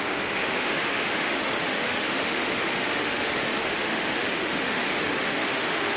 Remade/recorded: remade